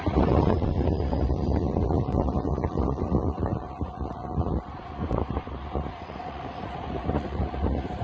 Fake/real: fake